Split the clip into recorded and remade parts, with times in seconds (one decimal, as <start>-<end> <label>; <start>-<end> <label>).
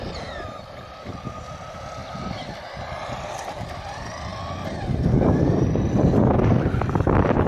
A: 0.0-7.5 recorded